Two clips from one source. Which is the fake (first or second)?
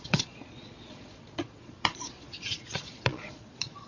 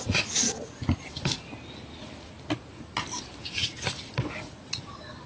first